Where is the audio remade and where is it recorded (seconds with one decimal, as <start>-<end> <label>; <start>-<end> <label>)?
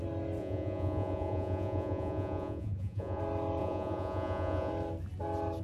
0.0-0.4 recorded; 0.4-3.2 remade; 3.2-3.6 recorded; 3.6-4.7 remade; 4.7-5.6 recorded